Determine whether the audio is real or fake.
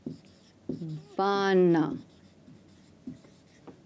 real